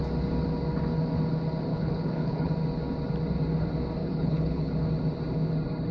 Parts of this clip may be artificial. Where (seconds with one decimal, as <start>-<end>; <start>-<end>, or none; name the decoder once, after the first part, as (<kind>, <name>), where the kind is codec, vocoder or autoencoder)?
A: 1.7-2.5 (codec, HILCodec); 4.0-4.7